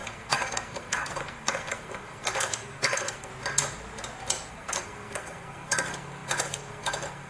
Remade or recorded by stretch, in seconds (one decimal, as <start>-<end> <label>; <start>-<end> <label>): 0.0-3.3 remade; 3.3-4.5 recorded; 4.5-7.3 remade